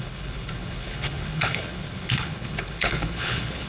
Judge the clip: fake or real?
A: fake